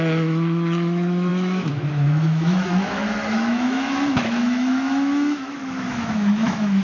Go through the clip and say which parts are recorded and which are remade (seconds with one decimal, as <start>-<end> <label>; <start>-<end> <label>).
0.0-6.8 remade